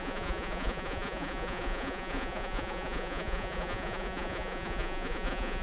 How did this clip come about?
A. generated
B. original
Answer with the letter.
A